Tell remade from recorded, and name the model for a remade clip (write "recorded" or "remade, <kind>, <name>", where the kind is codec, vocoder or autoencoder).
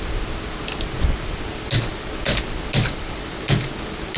recorded